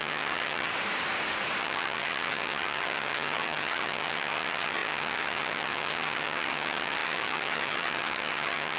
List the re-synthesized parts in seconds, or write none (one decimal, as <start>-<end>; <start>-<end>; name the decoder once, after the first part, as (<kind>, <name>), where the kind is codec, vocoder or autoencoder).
0.0-0.7 (vocoder, HiFi-GAN); 1.6-8.8